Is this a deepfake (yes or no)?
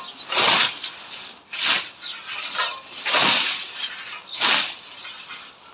no